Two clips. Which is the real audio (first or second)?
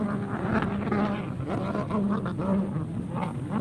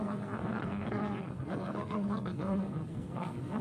first